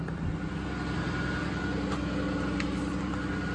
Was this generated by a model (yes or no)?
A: no